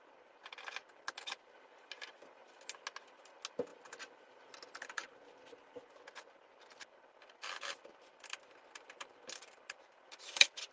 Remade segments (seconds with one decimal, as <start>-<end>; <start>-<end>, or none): none